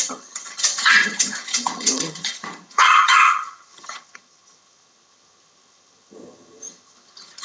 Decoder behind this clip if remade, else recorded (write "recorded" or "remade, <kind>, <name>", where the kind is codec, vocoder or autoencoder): remade, vocoder, HiFi-GAN